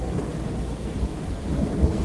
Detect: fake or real fake